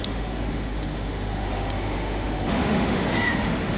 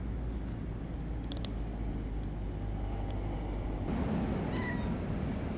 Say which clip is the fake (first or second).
first